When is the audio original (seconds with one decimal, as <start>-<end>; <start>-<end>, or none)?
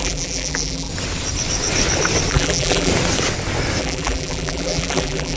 0.9-2.3; 2.9-3.8